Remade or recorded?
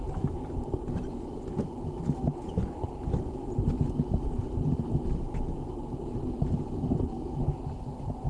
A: recorded